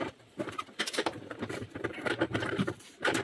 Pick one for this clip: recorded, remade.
remade